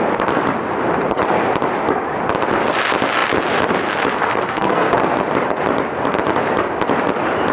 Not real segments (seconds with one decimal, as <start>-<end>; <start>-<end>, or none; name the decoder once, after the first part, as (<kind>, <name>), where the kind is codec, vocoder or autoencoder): 4.3-4.9 (codec, SNAC)